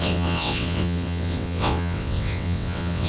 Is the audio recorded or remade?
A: remade